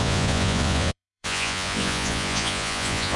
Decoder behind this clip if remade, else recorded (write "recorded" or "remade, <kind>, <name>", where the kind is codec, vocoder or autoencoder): remade, vocoder, Vocos